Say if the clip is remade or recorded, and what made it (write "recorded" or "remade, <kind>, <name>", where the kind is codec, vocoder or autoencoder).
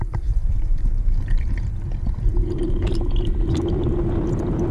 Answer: remade, vocoder, BigVGAN v2